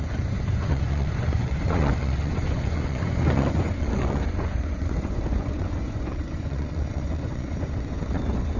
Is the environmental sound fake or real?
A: fake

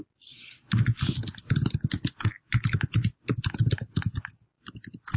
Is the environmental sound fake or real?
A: real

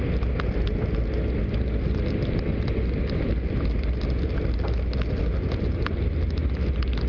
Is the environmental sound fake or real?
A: real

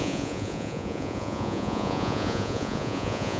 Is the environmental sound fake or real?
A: fake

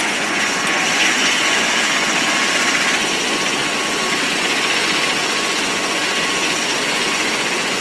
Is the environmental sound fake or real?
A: fake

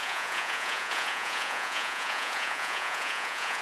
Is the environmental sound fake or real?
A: fake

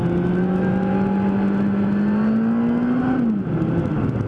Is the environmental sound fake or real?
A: real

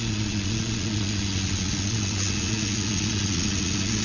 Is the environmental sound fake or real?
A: fake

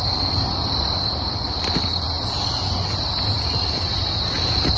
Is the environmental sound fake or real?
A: real